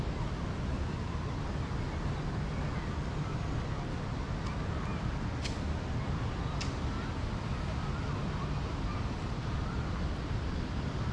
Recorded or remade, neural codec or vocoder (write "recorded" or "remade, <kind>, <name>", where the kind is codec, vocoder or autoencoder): recorded